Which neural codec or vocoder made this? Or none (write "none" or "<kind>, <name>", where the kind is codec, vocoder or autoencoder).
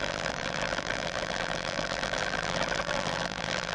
vocoder, BigVGAN v2